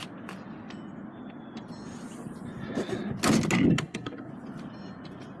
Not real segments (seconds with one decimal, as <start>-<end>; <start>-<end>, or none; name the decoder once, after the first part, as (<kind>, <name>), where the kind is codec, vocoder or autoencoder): 3.7-4.3 (codec, SNAC)